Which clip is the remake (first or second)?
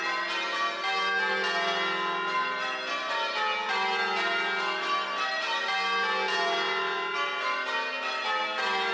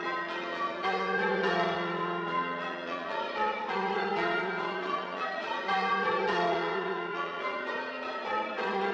second